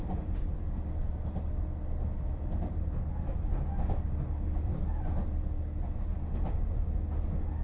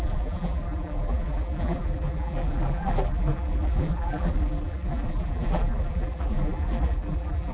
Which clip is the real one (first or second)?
first